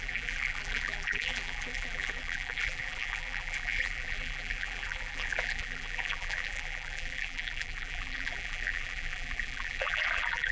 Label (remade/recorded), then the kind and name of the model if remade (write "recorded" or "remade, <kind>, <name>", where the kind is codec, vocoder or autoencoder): remade, vocoder, BigVGAN v2